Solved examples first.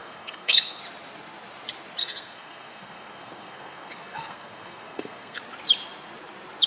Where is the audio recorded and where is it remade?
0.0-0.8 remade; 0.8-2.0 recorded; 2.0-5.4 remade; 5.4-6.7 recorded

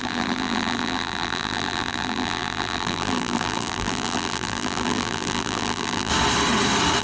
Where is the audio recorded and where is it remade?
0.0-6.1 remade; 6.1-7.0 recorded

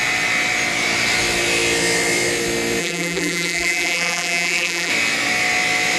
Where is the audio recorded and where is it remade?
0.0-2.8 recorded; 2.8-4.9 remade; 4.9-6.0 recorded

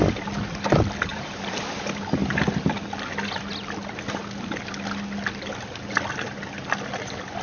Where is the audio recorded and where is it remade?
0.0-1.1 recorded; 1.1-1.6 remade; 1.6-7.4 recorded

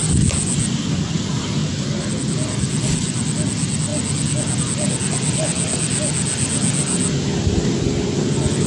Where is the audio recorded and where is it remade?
0.0-1.6 recorded; 1.6-2.1 remade; 2.1-8.7 recorded